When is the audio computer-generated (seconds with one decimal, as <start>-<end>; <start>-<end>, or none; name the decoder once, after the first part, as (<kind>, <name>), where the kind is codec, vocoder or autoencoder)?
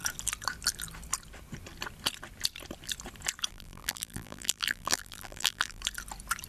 3.5-5.8 (vocoder, BigVGAN v2)